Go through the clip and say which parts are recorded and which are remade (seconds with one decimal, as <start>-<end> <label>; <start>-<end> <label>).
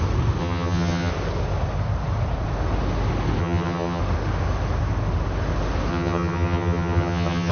0.0-0.4 recorded; 0.4-1.1 remade; 1.1-3.4 recorded; 3.4-4.0 remade; 4.0-5.9 recorded; 5.9-7.5 remade